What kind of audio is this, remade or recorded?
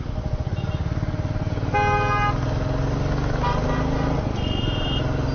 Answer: recorded